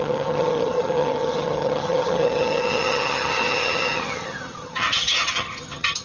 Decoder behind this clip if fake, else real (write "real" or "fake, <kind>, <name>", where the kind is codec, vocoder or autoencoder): fake, vocoder, HiFi-GAN